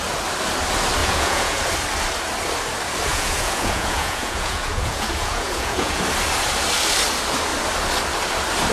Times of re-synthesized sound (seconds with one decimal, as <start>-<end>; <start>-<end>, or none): 1.0-1.6; 3.1-6.0